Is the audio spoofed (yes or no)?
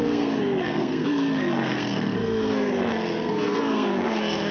yes